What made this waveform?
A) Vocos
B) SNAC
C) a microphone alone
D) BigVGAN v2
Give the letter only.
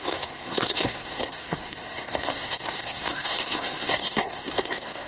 B